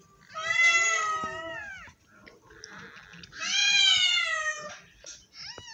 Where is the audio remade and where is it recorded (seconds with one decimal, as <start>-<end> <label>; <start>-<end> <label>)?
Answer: 0.0-3.6 recorded; 3.6-4.7 remade; 4.7-5.7 recorded